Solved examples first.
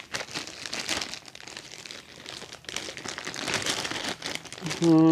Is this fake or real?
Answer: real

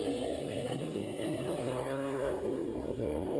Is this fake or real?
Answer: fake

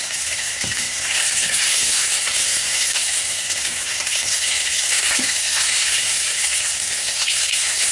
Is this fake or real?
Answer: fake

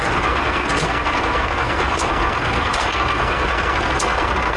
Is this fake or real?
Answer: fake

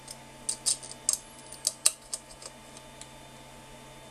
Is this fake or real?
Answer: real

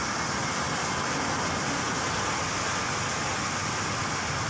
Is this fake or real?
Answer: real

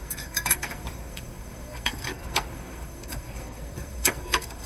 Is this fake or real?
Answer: fake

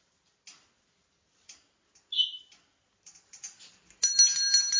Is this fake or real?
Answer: real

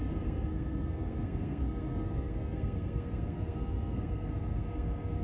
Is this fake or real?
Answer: fake